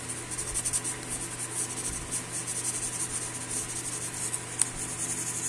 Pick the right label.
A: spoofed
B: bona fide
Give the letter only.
B